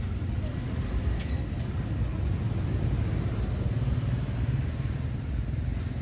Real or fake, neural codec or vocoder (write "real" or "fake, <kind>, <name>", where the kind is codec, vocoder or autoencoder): real